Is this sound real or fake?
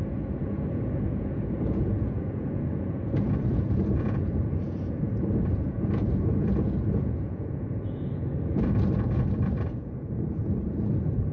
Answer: fake